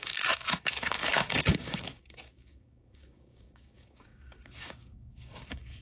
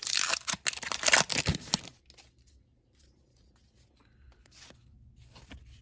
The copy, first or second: first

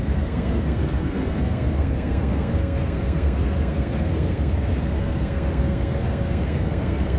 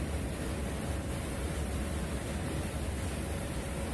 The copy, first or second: first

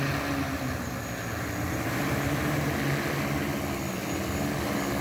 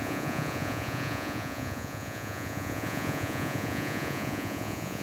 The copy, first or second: second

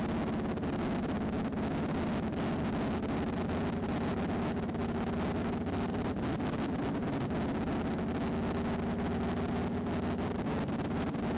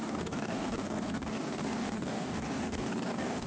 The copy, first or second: second